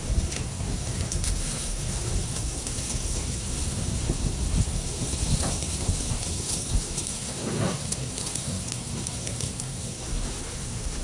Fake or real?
fake